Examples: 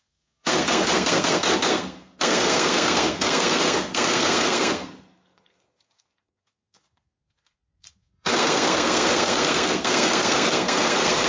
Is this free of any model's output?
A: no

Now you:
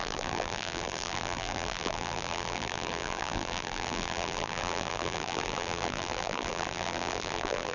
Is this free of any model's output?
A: no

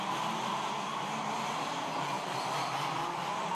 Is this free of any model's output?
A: yes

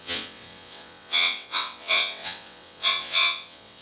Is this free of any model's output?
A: no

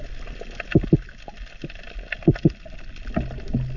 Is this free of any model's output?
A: yes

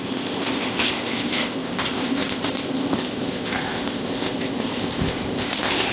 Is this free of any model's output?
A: no